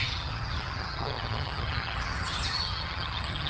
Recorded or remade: remade